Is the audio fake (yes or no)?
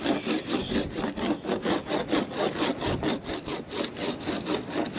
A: no